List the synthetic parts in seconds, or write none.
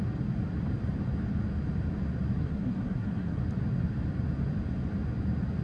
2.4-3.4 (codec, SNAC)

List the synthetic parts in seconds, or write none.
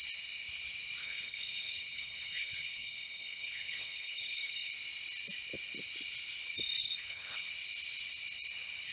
1.0-4.7 (codec, HILCodec); 6.8-7.5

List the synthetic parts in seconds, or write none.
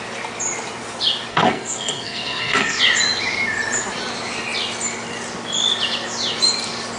1.3-2.8 (codec, SNAC)